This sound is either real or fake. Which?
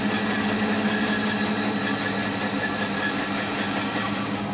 fake